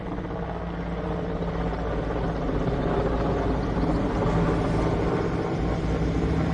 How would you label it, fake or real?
real